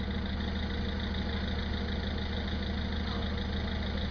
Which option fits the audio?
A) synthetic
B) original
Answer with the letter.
B